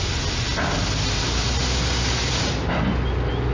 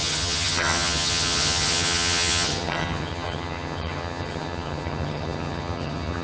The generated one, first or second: second